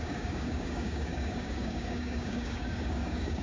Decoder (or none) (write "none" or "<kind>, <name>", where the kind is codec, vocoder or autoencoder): codec, DAC